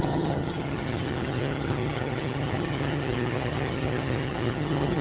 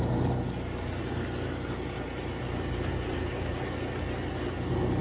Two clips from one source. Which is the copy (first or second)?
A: first